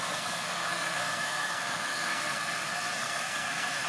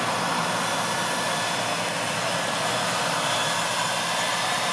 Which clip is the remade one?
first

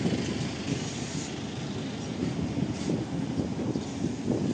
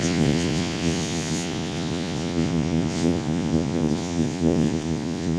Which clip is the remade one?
second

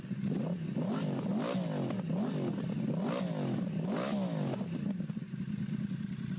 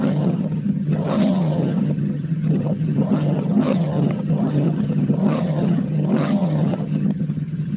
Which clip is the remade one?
second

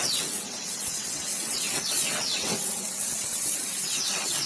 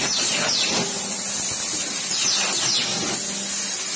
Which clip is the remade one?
first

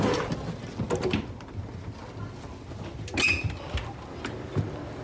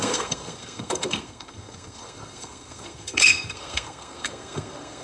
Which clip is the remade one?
second